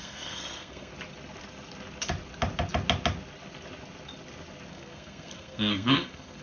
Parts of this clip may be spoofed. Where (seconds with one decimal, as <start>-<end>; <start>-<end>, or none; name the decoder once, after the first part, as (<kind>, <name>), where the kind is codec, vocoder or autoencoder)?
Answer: 0.0-0.9 (codec, SNAC); 4.7-6.4